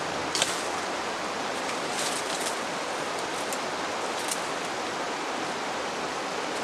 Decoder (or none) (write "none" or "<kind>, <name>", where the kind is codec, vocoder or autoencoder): none